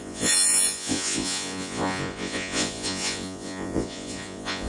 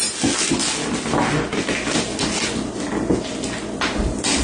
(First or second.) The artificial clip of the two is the first